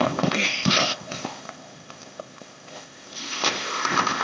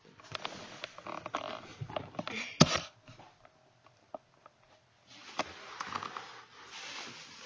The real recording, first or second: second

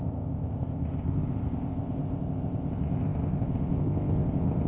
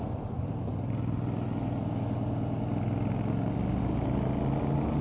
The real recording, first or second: second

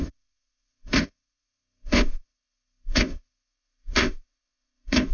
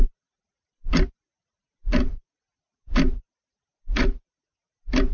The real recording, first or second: second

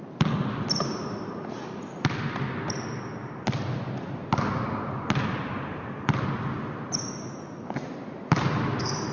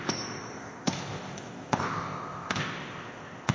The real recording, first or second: first